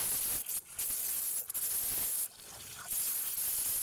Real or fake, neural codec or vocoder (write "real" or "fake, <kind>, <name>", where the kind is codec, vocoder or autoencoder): real